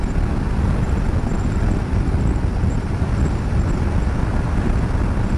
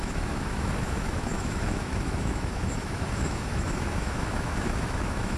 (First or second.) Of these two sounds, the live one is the first